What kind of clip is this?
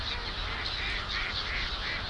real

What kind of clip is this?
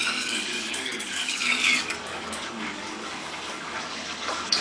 fake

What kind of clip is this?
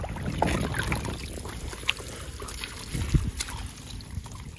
real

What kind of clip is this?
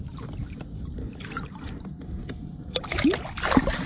real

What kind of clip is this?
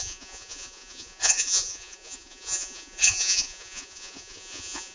fake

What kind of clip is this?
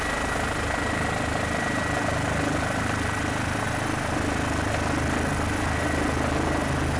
real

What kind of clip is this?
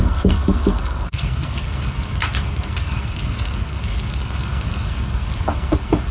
fake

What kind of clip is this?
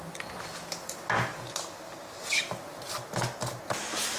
real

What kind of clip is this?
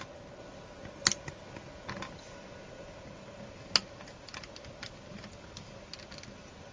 real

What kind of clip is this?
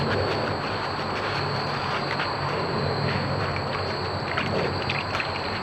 real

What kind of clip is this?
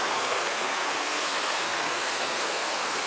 fake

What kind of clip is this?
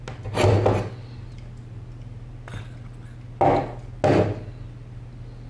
real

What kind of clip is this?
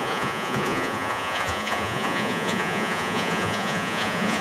fake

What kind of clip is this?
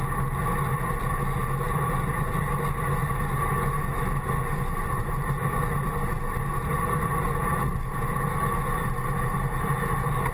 real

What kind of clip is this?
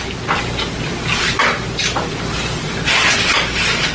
real